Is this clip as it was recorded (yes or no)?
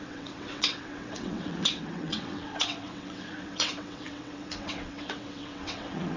no